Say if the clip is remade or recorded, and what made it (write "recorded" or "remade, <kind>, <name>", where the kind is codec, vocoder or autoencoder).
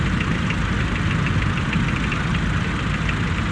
recorded